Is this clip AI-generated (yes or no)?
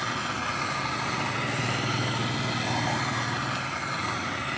no